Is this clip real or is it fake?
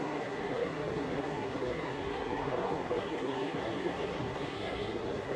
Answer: fake